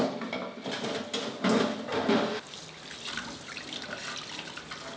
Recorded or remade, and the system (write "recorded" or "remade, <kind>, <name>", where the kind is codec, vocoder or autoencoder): recorded